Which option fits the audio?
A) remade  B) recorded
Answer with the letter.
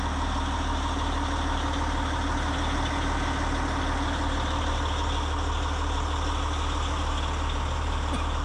B